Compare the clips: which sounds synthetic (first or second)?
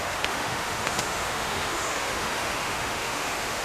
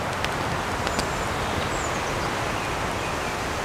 first